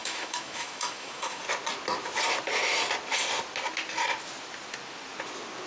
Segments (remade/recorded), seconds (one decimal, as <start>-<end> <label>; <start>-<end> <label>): 0.0-1.4 remade; 1.4-5.7 recorded